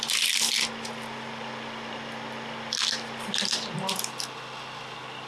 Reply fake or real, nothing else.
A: real